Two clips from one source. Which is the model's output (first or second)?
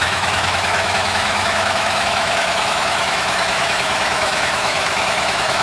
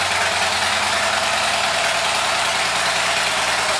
first